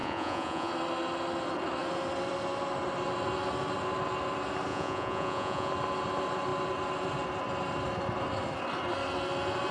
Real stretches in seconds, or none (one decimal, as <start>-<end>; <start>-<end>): 0.7-4.7; 5.7-9.7